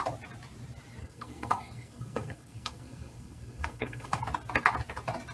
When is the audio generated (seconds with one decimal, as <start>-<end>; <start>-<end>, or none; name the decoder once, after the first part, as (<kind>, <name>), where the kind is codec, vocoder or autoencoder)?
1.0-4.2 (codec, SNAC)